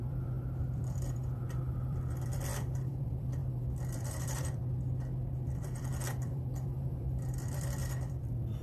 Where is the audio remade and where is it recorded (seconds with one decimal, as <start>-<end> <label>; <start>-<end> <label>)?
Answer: 0.0-4.6 remade; 4.6-5.3 recorded; 5.3-8.6 remade